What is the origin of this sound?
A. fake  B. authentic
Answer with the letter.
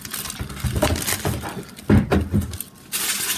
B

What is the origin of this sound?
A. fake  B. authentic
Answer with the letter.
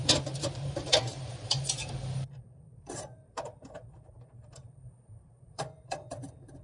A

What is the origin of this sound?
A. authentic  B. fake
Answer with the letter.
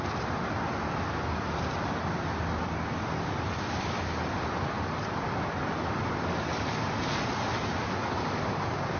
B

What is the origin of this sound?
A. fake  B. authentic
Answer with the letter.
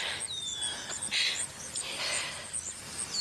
B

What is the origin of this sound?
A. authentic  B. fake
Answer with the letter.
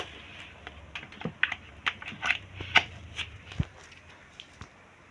A